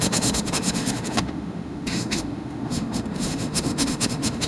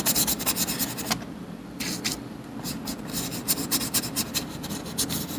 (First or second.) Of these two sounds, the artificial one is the first